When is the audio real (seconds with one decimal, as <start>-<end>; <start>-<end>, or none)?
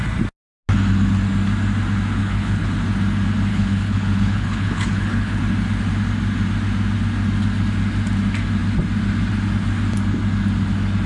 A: 0.0-2.2; 2.7-3.5; 5.4-11.1